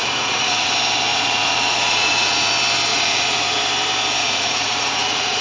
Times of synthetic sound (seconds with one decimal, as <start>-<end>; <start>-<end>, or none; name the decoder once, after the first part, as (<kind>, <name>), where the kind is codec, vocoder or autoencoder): 0.0-0.7 (vocoder, Vocos); 1.1-2.5; 2.9-3.6; 4.2-5.4